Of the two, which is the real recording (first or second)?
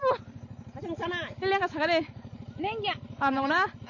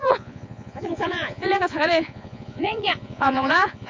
first